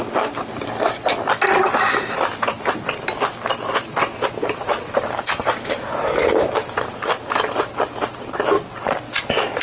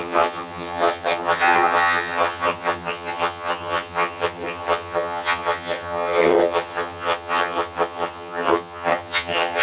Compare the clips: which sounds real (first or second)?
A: first